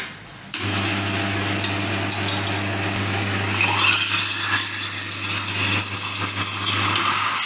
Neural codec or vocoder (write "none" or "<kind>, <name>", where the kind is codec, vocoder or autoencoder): none